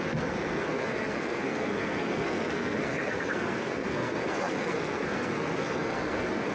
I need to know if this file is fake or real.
fake